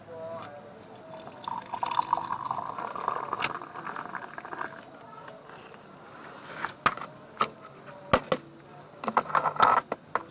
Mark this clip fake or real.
real